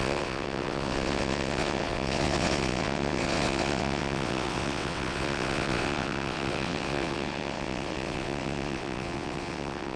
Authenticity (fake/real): fake